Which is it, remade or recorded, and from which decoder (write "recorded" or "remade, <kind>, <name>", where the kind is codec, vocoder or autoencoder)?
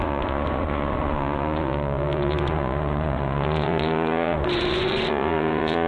remade, vocoder, Vocos